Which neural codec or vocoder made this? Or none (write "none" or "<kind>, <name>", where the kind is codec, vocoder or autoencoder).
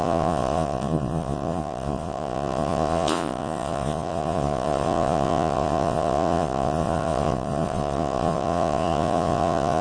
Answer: vocoder, Vocos